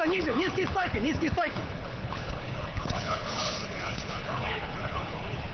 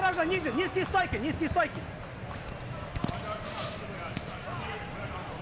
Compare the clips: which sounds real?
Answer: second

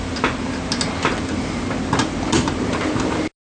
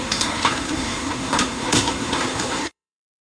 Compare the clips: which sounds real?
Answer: first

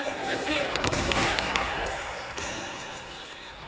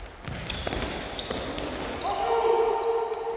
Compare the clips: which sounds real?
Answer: second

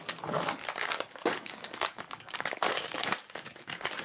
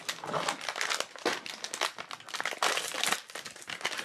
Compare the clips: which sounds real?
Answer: second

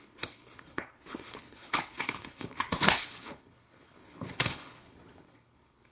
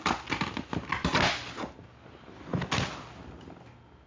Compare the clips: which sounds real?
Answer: second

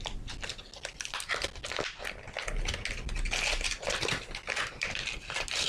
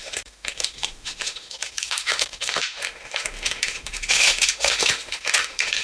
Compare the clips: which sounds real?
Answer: first